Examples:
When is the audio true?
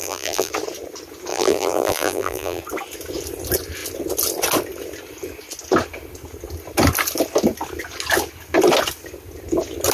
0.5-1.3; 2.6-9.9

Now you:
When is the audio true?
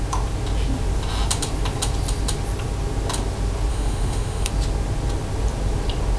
0.0-3.7; 4.5-6.2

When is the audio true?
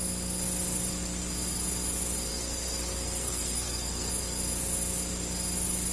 0.0-2.3; 4.1-5.9